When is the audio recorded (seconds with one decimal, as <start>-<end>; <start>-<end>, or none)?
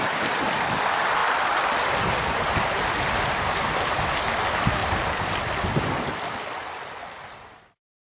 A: 0.0-8.2